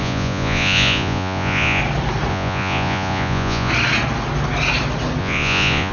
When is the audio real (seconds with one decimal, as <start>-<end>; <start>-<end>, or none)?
1.8-2.3; 3.7-5.2